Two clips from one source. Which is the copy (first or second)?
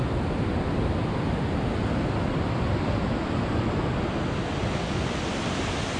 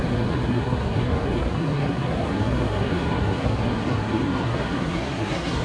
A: second